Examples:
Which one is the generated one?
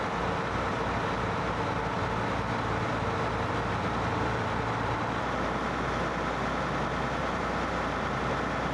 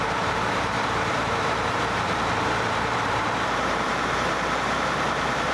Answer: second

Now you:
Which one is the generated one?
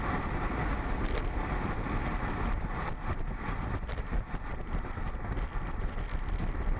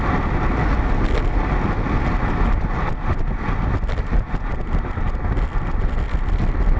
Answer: first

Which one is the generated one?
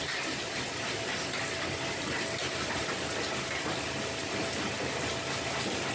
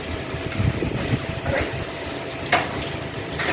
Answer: second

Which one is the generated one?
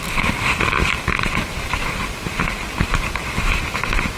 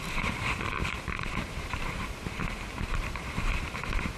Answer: second